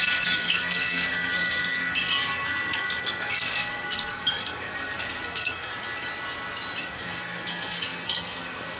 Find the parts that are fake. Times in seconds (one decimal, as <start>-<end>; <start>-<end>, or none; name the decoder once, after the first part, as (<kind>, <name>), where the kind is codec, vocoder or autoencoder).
0.0-5.7 (codec, SNAC); 6.8-8.8